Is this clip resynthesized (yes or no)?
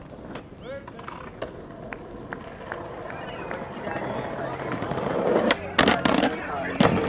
no